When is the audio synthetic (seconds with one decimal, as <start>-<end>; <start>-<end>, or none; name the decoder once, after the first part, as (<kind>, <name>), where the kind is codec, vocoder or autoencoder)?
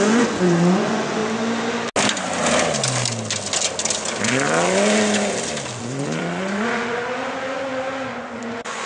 0.0-1.2 (vocoder, Vocos); 5.8-7.0; 8.2-8.9